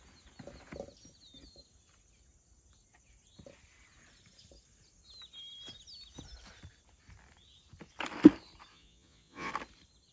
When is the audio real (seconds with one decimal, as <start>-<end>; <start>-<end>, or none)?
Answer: 0.0-8.7; 9.5-10.1